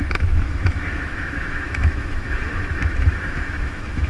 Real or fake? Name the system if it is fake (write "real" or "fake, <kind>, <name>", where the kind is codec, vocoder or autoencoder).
fake, autoencoder, DAC-VAE